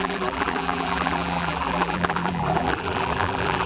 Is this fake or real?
fake